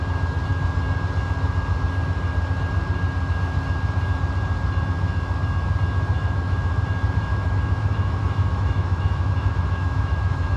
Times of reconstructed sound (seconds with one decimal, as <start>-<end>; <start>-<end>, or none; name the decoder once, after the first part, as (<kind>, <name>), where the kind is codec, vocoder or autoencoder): 6.2-6.8 (autoencoder, DAC-VAE); 7.3-10.6